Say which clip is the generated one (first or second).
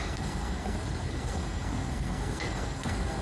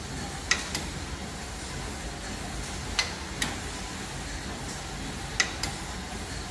first